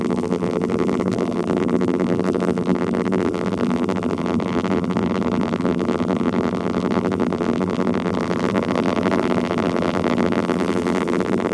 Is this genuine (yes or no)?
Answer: no